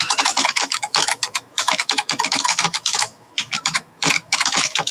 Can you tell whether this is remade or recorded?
remade